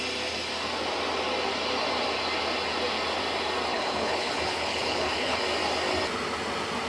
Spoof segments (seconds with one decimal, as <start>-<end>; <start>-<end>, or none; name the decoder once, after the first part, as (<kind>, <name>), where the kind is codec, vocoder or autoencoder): 3.7-5.4 (codec, HILCodec)